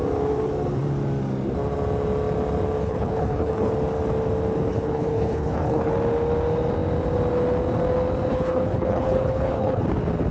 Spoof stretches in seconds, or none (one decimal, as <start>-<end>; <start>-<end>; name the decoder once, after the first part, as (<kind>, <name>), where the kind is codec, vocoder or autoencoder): 2.8-3.7 (codec, HILCodec); 4.7-5.9; 8.3-9.8